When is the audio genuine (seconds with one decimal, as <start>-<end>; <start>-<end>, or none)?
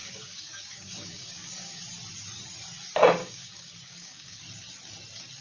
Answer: 1.8-3.2; 4.4-5.4